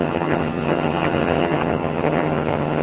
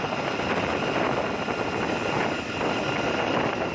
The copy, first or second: first